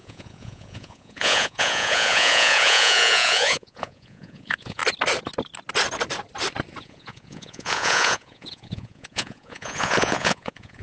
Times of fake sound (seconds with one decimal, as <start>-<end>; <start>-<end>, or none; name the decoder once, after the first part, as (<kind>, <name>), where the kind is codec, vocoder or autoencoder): 0.0-4.8 (vocoder, Vocos); 6.8-10.8